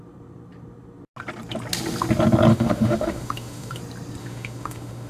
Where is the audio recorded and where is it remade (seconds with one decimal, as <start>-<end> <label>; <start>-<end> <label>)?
0.0-2.5 recorded; 2.5-3.8 remade; 3.8-4.2 recorded; 4.2-5.1 remade